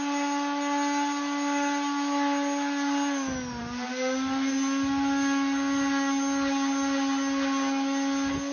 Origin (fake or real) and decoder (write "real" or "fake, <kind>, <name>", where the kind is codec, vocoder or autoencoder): real